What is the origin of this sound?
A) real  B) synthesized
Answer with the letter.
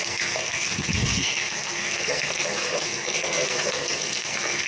B